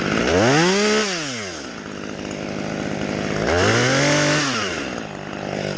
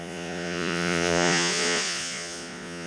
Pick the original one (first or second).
first